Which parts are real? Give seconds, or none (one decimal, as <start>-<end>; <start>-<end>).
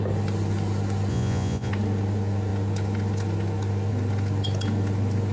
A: 0.0-1.1; 1.7-5.3